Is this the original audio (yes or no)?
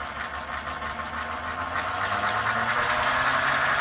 yes